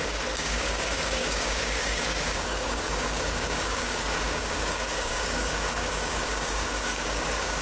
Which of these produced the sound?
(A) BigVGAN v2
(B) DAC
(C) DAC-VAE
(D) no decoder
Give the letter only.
B